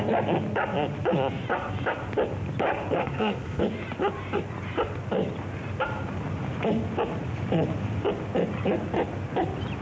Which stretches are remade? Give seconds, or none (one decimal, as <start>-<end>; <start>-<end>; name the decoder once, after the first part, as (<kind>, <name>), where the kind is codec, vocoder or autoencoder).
3.0-3.6 (codec, ZipCodec)